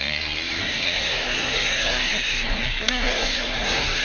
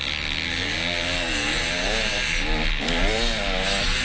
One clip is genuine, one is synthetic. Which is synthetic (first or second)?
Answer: first